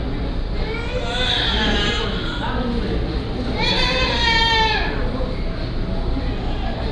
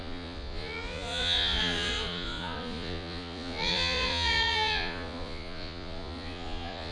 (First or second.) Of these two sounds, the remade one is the second